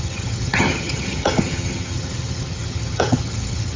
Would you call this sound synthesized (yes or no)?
yes